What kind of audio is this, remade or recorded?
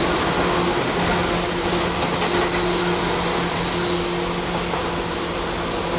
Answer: recorded